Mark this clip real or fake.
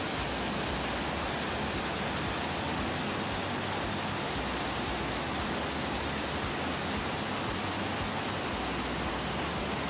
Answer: real